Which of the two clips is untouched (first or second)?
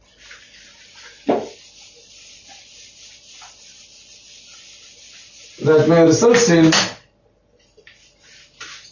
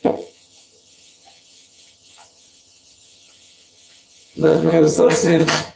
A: first